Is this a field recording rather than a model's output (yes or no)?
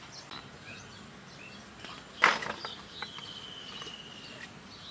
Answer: yes